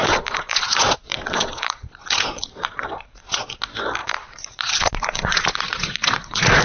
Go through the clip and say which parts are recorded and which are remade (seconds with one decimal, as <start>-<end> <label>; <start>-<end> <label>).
0.0-3.6 remade; 3.6-4.0 recorded; 4.0-6.6 remade